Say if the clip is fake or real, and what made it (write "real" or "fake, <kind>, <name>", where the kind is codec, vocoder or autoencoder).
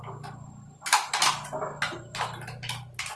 real